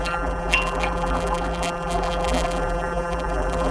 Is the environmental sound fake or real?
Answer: fake